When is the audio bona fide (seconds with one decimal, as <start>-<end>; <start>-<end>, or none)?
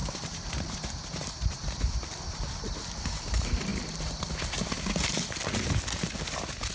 3.7-6.7